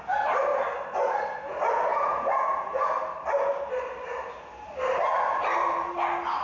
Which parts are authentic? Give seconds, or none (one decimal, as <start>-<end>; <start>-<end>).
0.0-1.9; 2.9-6.4